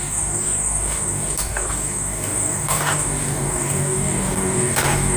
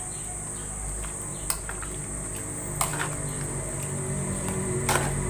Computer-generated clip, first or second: first